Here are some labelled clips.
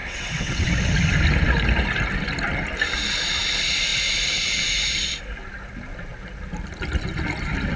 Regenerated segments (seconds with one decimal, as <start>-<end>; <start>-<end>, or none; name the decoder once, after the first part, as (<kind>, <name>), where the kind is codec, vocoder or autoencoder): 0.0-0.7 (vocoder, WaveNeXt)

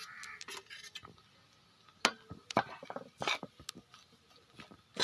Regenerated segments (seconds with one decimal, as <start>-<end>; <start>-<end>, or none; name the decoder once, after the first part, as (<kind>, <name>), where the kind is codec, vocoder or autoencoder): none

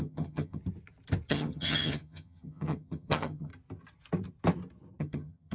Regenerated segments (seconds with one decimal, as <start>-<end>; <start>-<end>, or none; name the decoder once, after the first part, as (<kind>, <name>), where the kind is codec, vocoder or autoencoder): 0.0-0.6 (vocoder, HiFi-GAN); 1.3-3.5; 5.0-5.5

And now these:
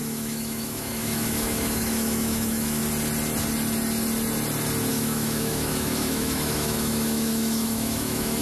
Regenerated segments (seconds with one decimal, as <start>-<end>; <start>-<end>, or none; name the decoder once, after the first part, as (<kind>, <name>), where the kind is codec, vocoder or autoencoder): 0.0-2.8 (autoencoder, DAC-VAE); 4.9-8.4

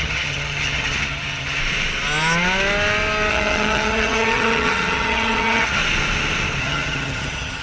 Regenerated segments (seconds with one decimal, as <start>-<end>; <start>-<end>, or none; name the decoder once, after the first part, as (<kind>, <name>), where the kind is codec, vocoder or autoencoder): 0.0-1.6 (vocoder, HiFi-GAN); 3.3-5.8; 6.6-7.6

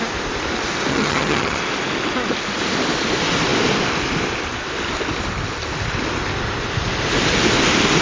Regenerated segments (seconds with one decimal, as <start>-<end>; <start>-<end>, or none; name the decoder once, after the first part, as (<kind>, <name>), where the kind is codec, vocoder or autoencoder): 0.9-1.6 (vocoder, HiFi-GAN)

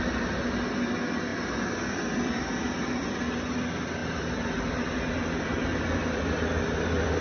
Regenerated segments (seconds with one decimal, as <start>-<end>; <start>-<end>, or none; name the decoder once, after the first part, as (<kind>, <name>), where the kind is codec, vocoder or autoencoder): none